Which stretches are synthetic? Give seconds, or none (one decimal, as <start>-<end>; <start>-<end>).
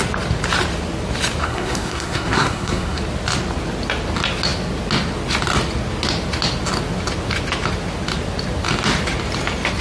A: 1.4-3.0